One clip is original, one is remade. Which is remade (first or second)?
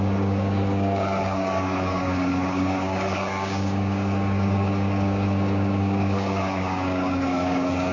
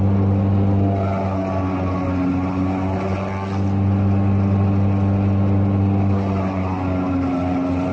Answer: first